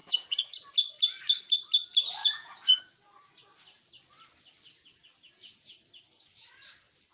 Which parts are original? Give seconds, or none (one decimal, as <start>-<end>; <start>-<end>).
0.7-2.2; 2.8-7.1